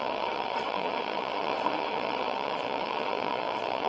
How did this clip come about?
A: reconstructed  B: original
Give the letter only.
A